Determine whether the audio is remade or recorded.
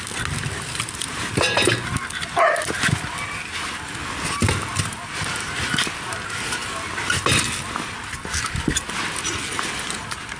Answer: recorded